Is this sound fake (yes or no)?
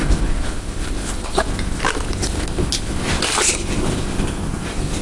no